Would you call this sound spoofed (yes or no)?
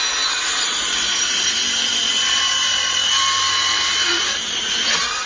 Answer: yes